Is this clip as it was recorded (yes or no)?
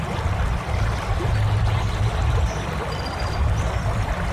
yes